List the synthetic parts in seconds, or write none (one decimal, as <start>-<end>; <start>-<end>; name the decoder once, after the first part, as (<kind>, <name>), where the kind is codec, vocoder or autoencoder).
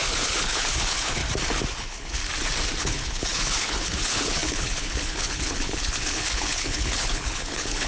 0.0-1.2 (codec, HILCodec); 1.8-2.2; 2.8-7.9